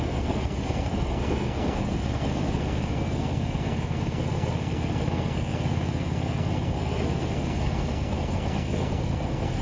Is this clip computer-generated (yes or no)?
yes